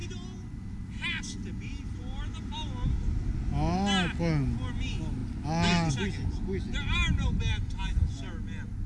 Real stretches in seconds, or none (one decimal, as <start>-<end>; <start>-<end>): 0.0-8.9